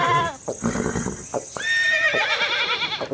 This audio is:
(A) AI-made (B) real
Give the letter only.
B